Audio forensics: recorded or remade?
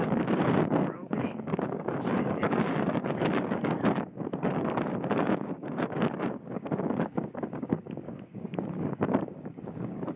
remade